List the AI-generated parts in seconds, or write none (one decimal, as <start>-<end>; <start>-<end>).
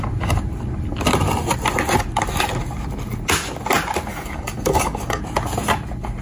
4.1-5.2